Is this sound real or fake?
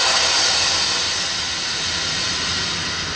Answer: real